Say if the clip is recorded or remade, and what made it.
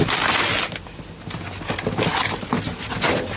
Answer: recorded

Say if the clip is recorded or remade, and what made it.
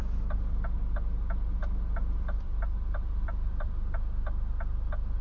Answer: recorded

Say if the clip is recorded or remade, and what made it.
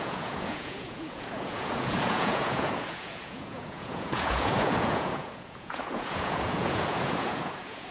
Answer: remade, vocoder, Vocos